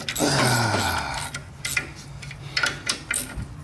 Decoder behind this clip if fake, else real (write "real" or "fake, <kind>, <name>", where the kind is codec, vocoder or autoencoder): real